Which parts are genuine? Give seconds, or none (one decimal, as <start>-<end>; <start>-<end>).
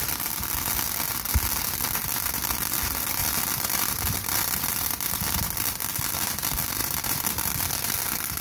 0.0-3.2; 5.8-6.8; 7.5-8.4